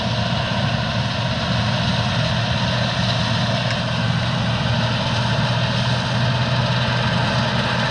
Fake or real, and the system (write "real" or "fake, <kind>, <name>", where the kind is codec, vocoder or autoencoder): real